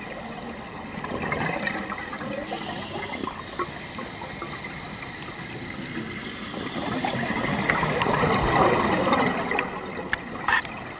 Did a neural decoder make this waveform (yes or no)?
no